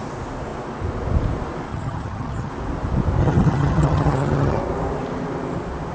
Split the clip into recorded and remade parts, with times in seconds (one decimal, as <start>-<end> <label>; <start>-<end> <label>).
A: 0.0-1.7 recorded; 1.7-2.5 remade; 2.5-3.2 recorded; 3.2-4.6 remade; 4.6-5.9 recorded